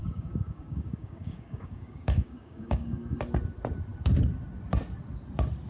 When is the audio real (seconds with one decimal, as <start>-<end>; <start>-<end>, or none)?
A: 3.2-5.7